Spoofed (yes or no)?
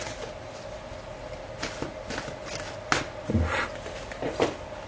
no